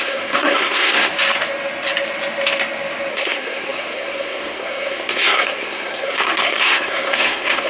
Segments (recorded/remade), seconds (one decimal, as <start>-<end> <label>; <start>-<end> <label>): 0.0-1.1 remade; 1.1-3.1 recorded; 3.1-7.7 remade